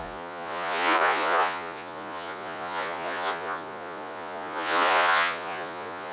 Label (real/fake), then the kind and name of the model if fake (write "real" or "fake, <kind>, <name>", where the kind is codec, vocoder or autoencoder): fake, vocoder, Vocos